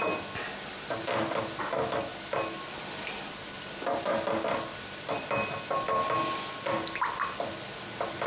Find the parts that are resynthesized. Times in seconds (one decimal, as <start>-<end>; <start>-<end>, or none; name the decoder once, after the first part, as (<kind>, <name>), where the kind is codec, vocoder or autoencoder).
none